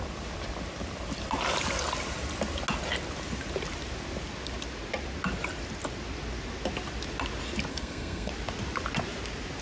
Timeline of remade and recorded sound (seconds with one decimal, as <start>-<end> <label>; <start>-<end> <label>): 0.0-7.7 recorded; 7.7-8.3 remade; 8.3-9.6 recorded